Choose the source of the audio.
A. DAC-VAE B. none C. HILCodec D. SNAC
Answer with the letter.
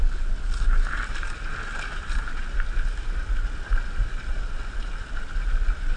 B